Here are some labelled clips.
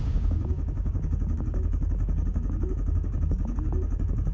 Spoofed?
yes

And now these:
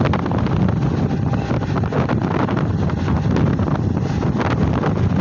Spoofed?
no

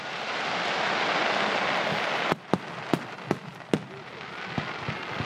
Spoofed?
no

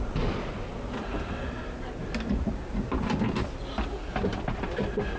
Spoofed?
no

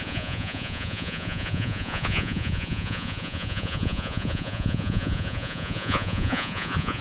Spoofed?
yes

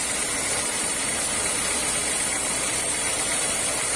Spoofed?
no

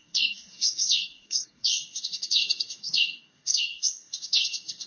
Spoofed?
yes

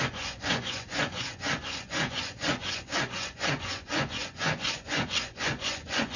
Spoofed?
yes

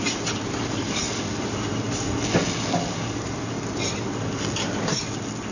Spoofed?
no